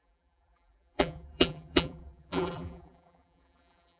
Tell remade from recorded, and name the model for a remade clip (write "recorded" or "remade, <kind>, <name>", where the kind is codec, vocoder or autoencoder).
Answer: remade, vocoder, BigVGAN v2